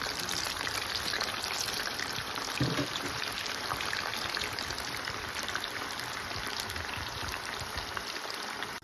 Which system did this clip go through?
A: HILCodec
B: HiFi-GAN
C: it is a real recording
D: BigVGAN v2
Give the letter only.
D